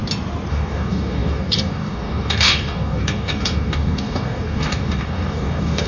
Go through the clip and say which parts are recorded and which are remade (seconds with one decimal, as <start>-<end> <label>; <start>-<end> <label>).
0.0-0.5 recorded; 0.5-5.9 remade